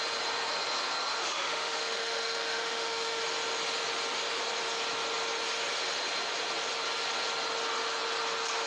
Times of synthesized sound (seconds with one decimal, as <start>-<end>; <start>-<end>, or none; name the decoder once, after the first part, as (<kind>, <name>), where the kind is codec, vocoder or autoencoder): 1.2-3.2 (autoencoder, DAC-VAE)